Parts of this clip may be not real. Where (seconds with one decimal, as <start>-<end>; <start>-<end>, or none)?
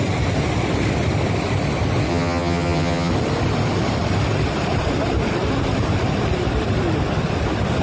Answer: 2.1-3.1